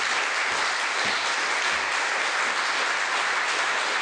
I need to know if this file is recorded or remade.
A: recorded